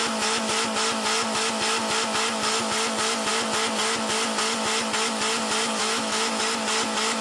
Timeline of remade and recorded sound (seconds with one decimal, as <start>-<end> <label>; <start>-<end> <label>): 0.0-5.8 recorded; 5.8-6.4 remade; 6.4-7.2 recorded